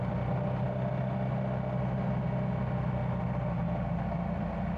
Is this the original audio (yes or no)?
yes